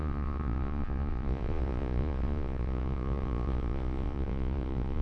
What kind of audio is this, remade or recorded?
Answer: remade